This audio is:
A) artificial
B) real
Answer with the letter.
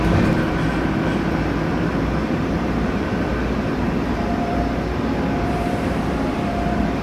A